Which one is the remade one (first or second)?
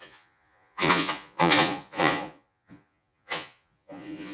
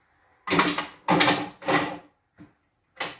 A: first